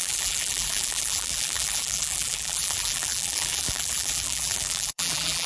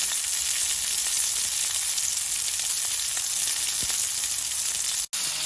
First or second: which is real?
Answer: second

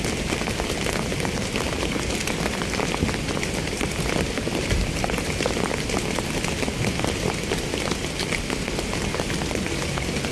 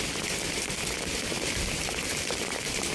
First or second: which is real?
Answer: first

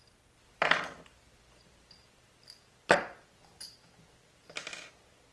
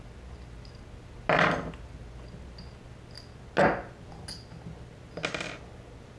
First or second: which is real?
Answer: second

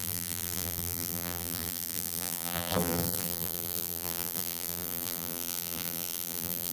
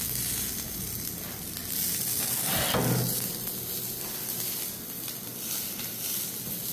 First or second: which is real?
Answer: second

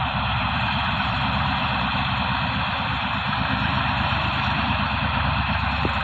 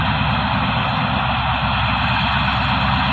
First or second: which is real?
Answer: second